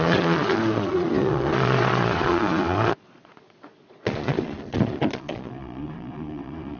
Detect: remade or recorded remade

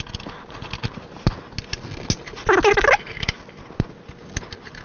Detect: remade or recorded recorded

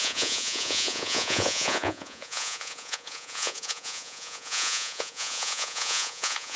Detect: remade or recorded remade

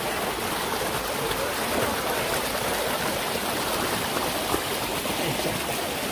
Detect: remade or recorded recorded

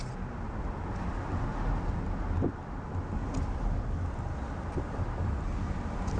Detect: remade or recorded recorded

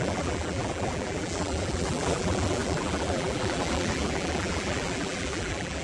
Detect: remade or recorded remade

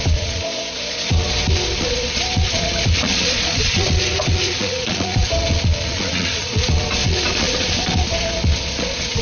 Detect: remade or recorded remade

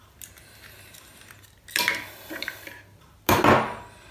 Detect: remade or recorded recorded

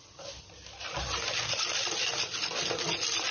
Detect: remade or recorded recorded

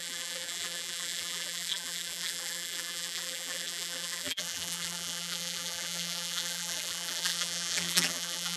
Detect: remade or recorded remade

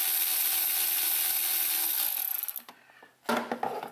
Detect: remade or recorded recorded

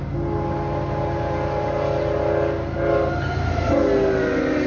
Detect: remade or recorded recorded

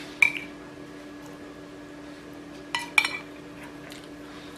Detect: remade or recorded recorded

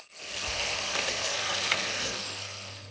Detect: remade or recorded remade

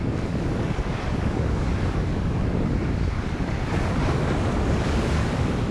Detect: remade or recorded remade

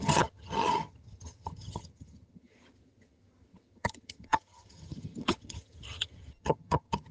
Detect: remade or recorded remade